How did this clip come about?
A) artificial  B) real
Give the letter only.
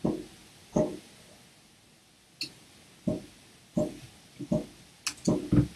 B